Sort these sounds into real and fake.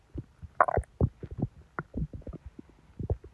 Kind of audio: real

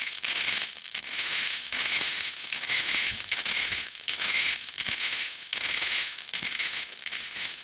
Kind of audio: fake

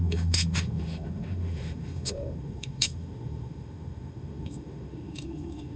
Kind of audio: fake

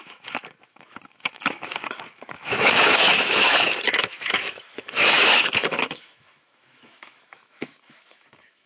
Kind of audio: fake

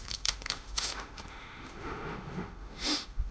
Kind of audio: fake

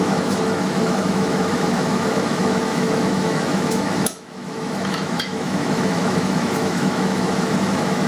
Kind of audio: fake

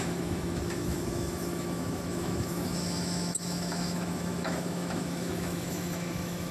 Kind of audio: fake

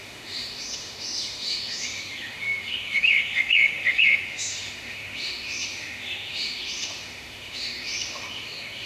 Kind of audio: fake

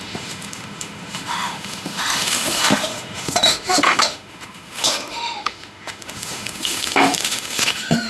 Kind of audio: fake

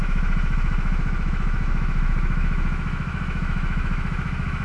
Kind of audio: fake